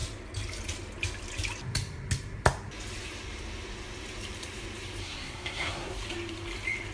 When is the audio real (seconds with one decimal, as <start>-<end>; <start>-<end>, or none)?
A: 0.0-5.0; 5.9-6.9